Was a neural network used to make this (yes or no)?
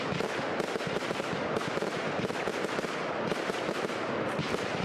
no